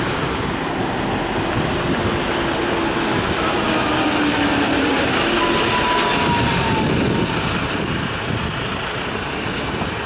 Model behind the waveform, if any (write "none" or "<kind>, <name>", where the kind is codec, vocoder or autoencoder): none